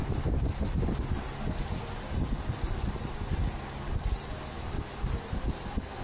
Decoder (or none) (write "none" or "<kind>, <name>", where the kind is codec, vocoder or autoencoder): none